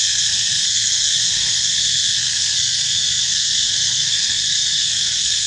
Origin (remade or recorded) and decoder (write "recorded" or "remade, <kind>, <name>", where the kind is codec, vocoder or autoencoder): remade, codec, SNAC